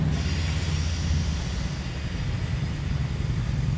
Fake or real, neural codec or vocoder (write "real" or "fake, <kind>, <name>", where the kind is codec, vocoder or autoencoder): real